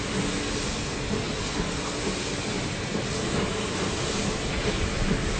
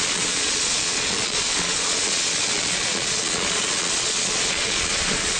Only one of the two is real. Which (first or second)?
first